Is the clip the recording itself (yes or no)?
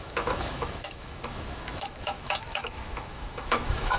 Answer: no